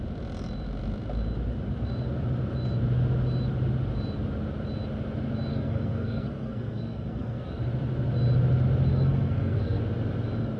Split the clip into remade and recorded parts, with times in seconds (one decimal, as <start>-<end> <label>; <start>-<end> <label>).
0.0-5.5 recorded; 5.5-7.6 remade; 7.6-8.9 recorded; 8.9-9.8 remade; 9.8-10.6 recorded